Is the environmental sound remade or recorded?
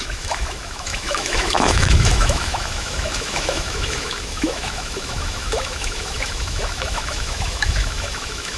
remade